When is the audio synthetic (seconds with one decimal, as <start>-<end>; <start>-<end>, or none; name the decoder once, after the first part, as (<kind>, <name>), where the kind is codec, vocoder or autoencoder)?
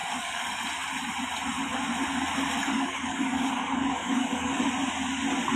0.0-0.6 (codec, DAC); 2.6-4.7